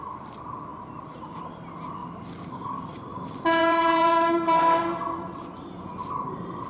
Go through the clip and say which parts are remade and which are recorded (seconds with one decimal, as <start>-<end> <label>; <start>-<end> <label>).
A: 0.0-0.7 recorded; 0.7-1.4 remade; 1.4-3.6 recorded; 3.6-5.7 remade; 5.7-6.7 recorded

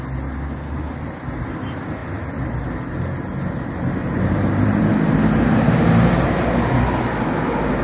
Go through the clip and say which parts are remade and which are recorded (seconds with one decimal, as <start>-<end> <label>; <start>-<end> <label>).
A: 0.0-4.0 recorded; 4.0-6.1 remade; 6.1-7.8 recorded

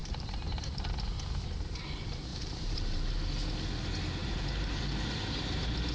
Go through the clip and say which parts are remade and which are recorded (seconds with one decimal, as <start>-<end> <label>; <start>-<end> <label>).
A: 0.0-0.9 remade; 0.9-2.3 recorded; 2.3-3.1 remade; 3.1-4.2 recorded; 4.2-5.4 remade; 5.4-5.9 recorded

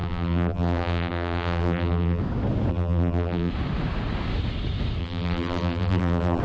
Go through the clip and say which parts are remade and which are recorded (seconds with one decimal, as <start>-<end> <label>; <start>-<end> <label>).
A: 0.0-2.2 remade; 2.2-2.7 recorded; 2.7-3.5 remade; 3.5-5.0 recorded; 5.0-6.4 remade

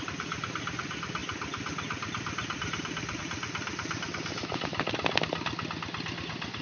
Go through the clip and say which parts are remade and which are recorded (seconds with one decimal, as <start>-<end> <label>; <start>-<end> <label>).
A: 0.0-6.6 recorded

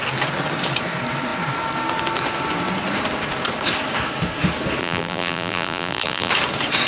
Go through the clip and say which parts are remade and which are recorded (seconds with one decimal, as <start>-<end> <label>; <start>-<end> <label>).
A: 0.0-4.8 recorded; 4.8-6.3 remade; 6.3-6.9 recorded